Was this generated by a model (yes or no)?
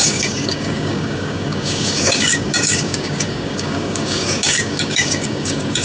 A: yes